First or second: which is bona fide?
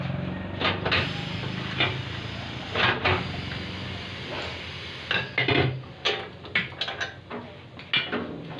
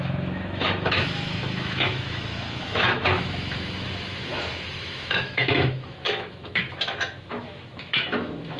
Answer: first